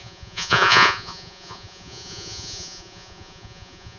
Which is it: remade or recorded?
remade